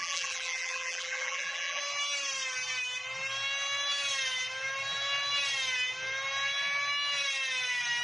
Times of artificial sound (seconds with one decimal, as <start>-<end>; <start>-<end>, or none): 0.0-1.8